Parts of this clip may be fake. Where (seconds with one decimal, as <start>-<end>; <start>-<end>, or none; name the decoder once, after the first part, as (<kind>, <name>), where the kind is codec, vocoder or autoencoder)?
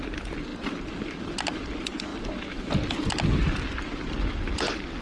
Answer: none